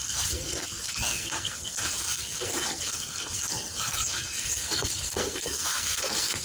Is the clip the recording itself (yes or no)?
no